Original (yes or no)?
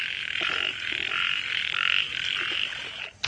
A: yes